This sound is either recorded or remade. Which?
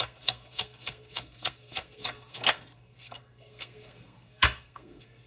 remade